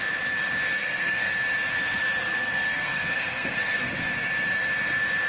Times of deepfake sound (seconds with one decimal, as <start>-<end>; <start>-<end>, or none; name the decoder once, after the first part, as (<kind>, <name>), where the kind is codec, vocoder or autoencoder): 0.8-1.3 (codec, SNAC); 2.2-3.9